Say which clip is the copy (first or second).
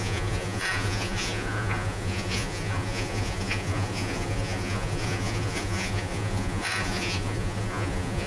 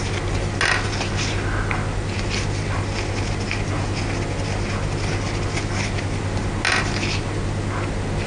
first